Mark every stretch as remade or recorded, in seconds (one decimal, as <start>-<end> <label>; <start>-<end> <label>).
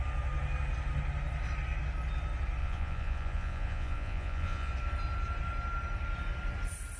0.0-2.6 recorded; 2.6-4.7 remade; 4.7-7.0 recorded